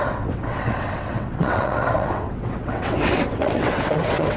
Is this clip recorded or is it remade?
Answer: remade